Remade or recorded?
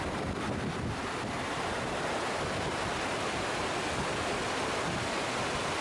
recorded